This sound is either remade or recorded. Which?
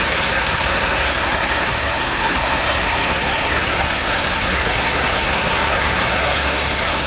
remade